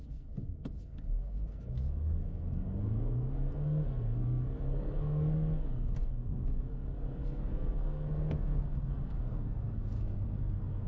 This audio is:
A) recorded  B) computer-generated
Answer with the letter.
B